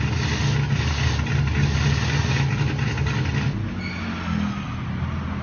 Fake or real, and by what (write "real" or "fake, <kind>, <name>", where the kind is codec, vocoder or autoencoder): real